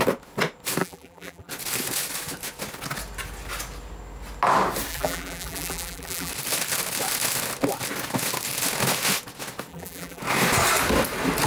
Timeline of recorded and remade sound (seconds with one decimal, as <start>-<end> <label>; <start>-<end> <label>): 0.0-0.8 recorded; 0.8-1.5 remade; 1.5-4.9 recorded; 4.9-6.3 remade; 6.3-9.7 recorded; 9.7-10.2 remade; 10.2-11.5 recorded